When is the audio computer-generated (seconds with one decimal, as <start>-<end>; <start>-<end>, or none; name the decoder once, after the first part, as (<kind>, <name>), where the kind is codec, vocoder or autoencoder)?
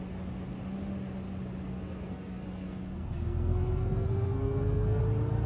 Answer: 1.7-5.0 (codec, SNAC)